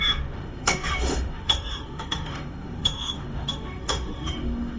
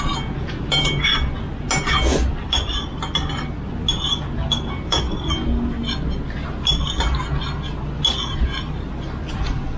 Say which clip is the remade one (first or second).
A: first